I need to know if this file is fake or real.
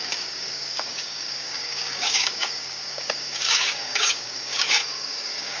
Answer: fake